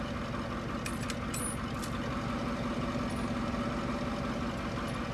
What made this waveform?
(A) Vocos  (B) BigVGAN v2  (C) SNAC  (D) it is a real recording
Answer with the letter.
D